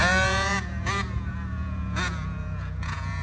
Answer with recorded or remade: remade